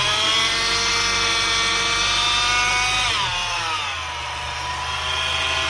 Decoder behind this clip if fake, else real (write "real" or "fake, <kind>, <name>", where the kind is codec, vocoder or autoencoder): real